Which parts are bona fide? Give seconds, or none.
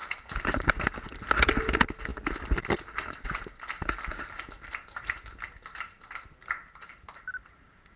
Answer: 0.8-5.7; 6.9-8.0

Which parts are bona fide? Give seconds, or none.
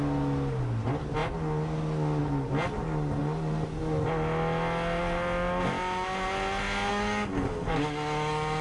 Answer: 0.0-6.9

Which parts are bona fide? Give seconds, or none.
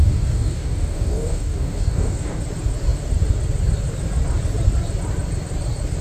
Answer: 2.4-6.0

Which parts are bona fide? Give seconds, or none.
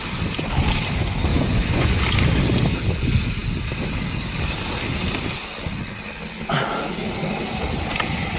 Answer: 0.0-1.3; 2.0-8.4